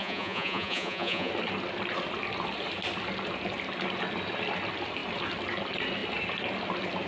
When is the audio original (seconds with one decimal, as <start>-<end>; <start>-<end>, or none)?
1.3-7.1